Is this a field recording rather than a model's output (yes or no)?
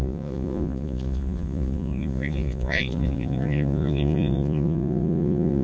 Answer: no